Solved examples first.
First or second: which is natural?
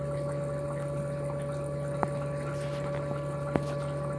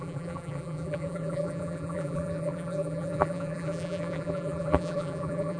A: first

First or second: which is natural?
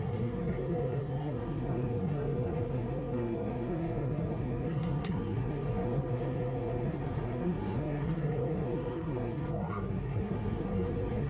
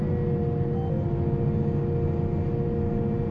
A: second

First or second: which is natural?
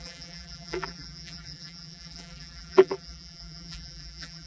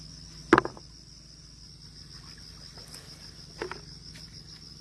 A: second